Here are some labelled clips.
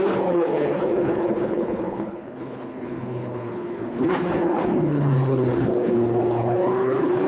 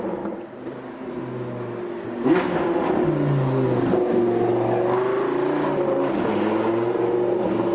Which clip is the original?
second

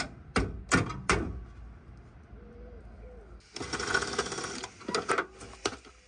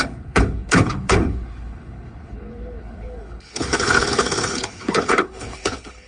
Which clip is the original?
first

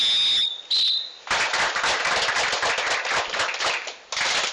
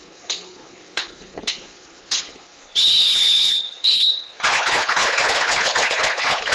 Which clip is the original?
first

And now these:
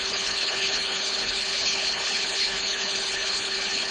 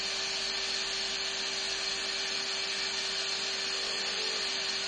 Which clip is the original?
second